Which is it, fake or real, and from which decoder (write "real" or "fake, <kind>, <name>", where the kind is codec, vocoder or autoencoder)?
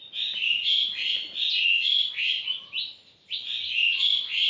real